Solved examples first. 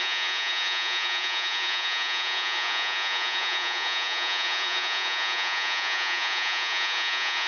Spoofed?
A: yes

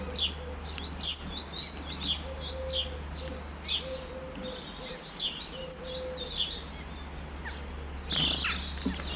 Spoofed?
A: no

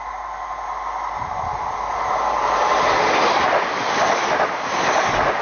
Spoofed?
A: no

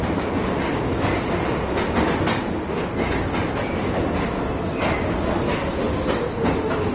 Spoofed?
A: no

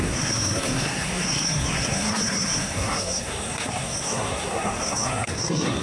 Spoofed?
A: yes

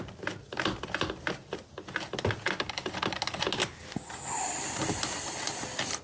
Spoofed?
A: no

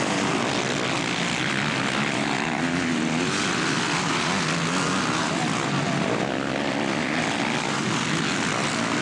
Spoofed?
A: no